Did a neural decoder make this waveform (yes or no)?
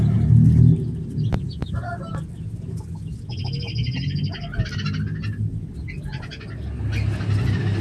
no